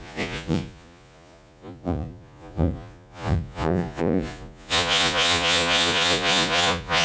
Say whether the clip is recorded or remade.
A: remade